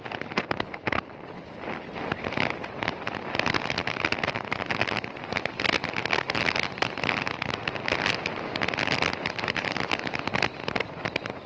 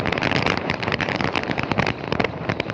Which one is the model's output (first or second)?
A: second